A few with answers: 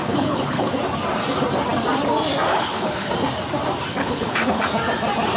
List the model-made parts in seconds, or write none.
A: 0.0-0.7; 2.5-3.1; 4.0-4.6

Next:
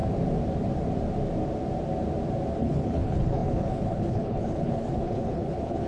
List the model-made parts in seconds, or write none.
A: 2.6-5.9

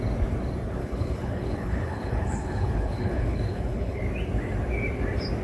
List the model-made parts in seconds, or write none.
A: 0.8-4.0

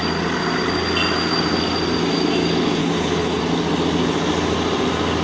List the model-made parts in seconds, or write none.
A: 2.8-3.4